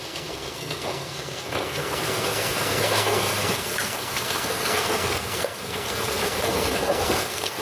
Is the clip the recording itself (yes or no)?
no